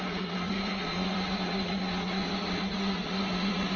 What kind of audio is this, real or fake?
fake